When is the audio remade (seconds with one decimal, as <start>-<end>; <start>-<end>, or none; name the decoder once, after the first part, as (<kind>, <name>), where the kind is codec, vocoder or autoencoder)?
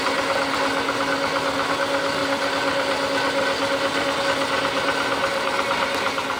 none